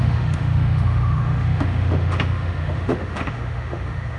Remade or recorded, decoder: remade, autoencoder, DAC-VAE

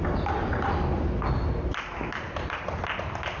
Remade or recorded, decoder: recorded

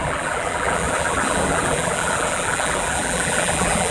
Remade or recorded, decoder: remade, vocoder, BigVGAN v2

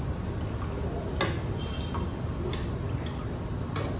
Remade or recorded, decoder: recorded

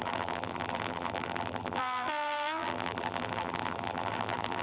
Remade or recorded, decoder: remade, vocoder, BigVGAN v2